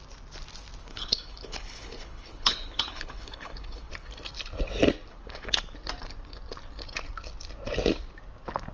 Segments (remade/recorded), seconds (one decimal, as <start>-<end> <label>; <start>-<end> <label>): 0.0-0.8 recorded; 0.8-3.9 remade; 3.9-5.1 recorded; 5.1-5.6 remade; 5.6-8.7 recorded

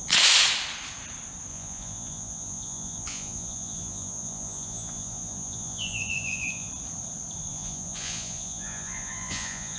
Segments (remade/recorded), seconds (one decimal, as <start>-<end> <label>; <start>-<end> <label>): 0.0-1.5 recorded; 1.5-6.7 remade; 6.7-7.5 recorded; 7.5-9.8 remade